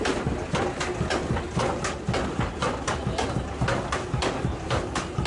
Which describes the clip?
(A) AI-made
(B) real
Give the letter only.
B